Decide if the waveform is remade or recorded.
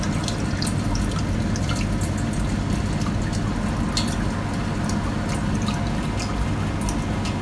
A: recorded